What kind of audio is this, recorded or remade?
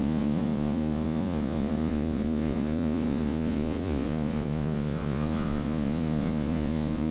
remade